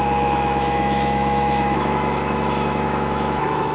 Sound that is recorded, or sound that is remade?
remade